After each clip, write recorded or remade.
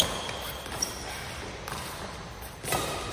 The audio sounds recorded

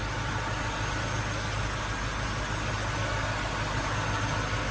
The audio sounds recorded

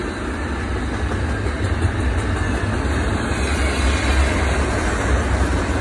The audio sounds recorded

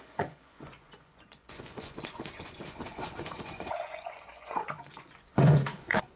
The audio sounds remade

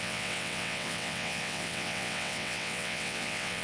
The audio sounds remade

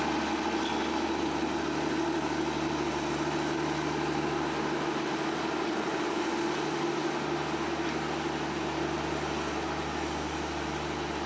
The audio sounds recorded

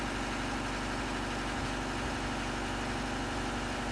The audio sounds recorded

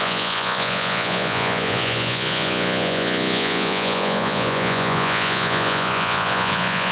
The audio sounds remade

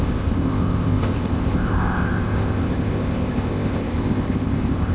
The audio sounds remade